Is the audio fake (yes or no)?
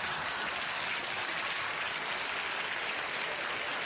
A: no